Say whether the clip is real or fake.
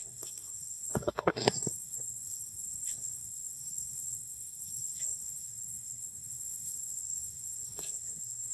fake